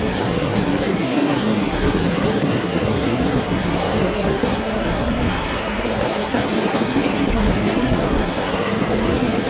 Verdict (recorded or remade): remade